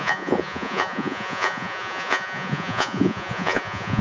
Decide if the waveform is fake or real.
fake